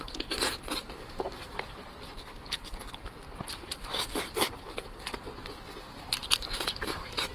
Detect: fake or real real